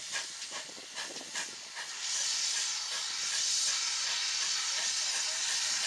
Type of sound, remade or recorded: recorded